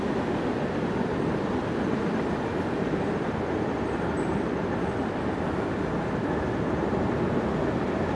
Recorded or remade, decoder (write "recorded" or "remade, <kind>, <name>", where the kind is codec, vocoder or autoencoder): recorded